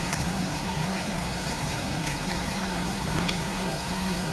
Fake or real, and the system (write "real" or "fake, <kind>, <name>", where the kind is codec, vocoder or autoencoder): fake, codec, SNAC